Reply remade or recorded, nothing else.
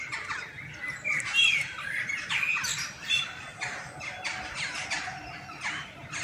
recorded